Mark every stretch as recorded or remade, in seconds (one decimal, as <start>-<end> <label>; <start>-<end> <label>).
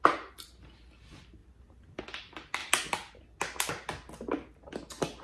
0.0-5.2 recorded